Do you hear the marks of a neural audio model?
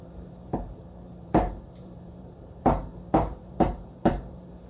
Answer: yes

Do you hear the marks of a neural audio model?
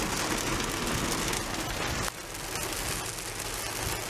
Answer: no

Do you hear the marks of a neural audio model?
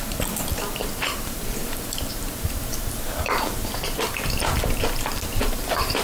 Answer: yes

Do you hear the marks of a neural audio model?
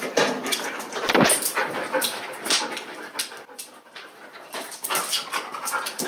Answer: yes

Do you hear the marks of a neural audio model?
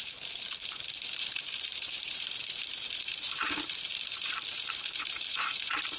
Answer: yes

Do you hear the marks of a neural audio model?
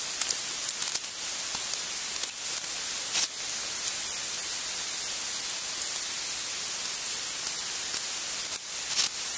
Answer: no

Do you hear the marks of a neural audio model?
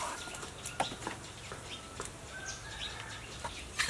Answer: yes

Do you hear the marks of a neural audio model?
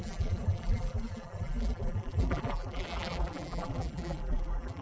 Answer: yes